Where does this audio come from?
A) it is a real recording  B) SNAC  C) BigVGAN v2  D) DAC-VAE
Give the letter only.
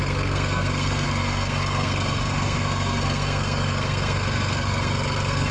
B